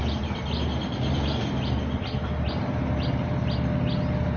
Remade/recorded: recorded